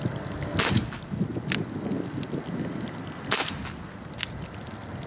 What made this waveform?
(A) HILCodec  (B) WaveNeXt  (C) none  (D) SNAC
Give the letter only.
C